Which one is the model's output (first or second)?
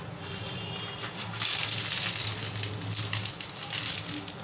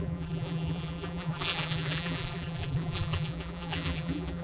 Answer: second